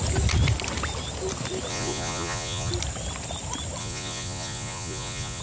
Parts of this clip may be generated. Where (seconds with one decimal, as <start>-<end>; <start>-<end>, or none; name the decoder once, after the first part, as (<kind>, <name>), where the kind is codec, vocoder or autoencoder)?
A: 1.7-2.7 (vocoder, Vocos); 3.8-5.4